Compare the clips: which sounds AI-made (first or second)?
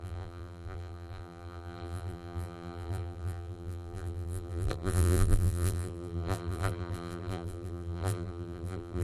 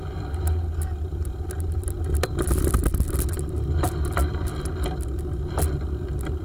first